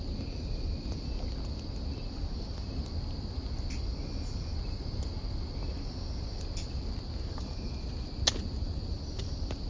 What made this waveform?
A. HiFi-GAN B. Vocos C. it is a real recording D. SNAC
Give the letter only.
C